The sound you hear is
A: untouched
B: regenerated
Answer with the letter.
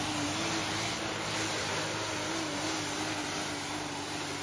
A